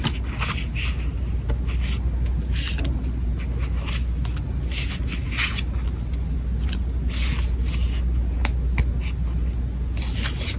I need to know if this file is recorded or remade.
recorded